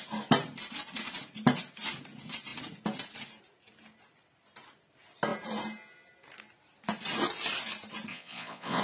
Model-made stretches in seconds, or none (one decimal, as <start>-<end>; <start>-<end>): 8.1-8.8